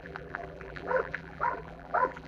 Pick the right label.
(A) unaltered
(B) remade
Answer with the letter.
B